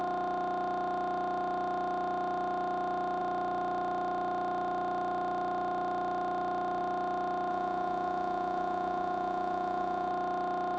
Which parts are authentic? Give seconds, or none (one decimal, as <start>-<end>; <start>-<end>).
0.0-7.5; 10.1-10.8